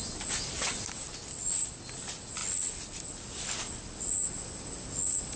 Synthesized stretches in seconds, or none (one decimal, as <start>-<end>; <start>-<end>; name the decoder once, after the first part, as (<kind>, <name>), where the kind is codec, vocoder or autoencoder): none